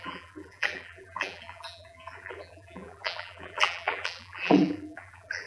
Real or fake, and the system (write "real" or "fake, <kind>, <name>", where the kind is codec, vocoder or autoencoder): fake, vocoder, BigVGAN v2